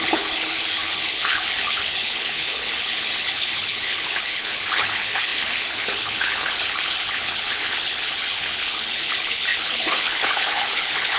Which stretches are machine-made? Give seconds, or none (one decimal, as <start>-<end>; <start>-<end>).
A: 0.0-11.2